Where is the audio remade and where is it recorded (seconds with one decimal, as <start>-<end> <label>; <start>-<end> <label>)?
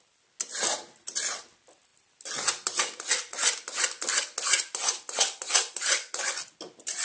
0.0-7.0 recorded